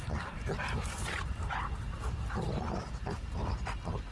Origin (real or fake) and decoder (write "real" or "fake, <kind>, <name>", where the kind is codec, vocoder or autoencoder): fake, vocoder, BigVGAN v2